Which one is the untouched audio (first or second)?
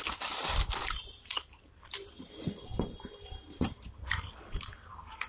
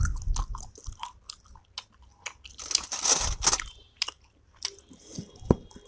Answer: second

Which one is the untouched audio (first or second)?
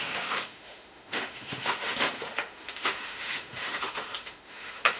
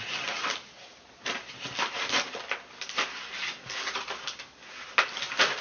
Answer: second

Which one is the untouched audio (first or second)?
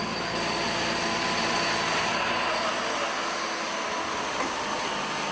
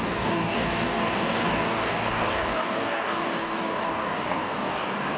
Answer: first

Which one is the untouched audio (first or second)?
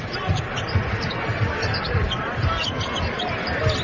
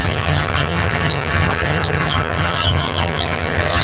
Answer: first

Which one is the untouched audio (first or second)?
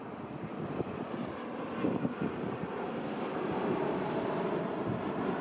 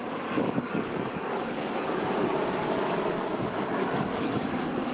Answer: first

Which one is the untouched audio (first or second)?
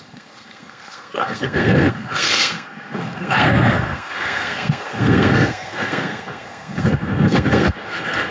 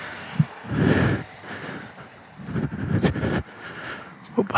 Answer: second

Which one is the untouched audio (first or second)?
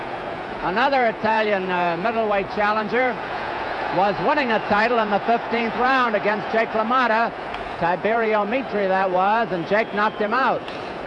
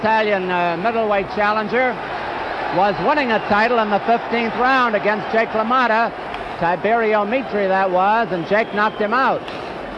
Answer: second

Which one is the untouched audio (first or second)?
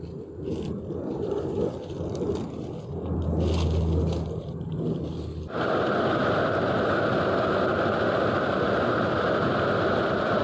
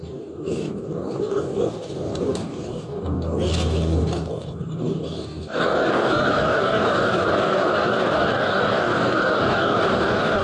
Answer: first